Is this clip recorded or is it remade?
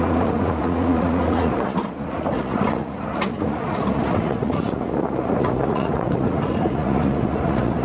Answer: remade